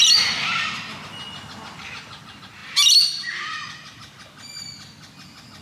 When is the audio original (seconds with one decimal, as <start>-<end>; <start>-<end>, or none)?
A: 0.0-5.6